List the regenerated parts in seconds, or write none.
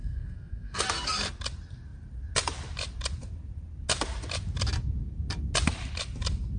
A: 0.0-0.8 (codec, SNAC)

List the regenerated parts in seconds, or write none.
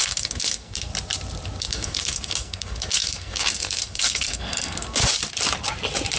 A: 0.0-0.9 (codec, SNAC); 1.6-5.0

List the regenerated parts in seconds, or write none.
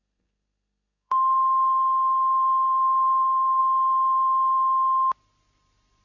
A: 0.0-3.6 (codec, SNAC)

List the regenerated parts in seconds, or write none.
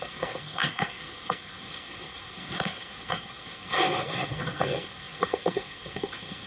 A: 0.0-6.5 (codec, SNAC)